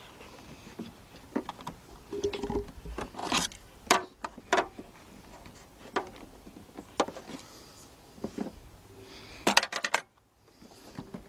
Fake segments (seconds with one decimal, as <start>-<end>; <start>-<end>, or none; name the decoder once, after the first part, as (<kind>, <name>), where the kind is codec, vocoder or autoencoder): none